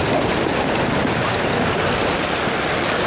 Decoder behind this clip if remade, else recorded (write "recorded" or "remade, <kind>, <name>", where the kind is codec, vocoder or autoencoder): recorded